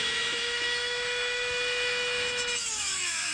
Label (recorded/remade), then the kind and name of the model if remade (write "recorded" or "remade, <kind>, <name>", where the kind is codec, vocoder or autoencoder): remade, autoencoder, DAC-VAE